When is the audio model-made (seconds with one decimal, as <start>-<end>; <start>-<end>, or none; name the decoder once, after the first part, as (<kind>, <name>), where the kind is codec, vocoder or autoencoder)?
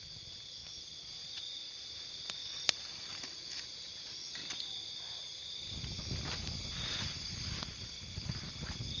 none